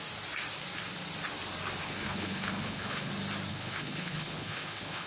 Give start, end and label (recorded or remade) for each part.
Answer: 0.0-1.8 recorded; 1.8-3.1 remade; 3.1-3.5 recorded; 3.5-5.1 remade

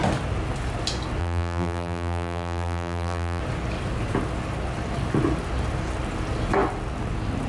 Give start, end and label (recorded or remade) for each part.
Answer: 0.0-1.2 recorded; 1.2-3.4 remade; 3.4-7.5 recorded

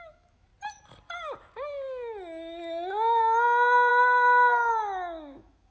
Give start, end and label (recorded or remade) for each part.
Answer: 0.0-0.5 remade; 0.5-3.9 recorded; 3.9-5.7 remade

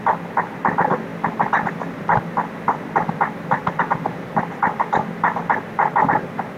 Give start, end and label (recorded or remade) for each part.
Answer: 0.0-6.6 recorded